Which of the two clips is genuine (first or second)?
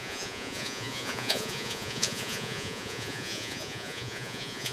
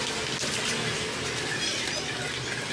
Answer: second